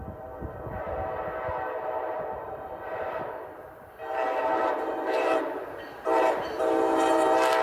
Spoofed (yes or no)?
no